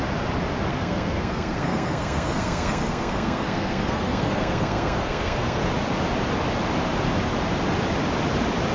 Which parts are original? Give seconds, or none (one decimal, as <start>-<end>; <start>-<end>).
0.0-0.7; 5.6-8.7